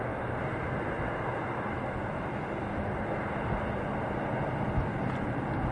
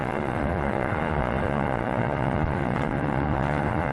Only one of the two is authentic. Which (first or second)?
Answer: first